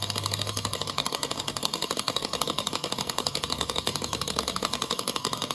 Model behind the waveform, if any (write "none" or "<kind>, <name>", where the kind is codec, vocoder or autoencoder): codec, SNAC